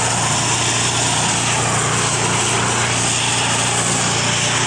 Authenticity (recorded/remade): recorded